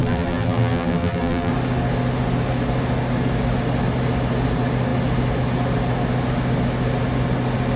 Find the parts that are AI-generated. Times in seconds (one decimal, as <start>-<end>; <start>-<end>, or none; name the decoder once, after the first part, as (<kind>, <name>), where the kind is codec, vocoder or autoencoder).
0.0-1.5 (vocoder, BigVGAN v2)